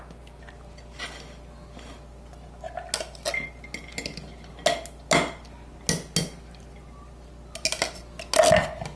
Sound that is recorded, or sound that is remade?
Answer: recorded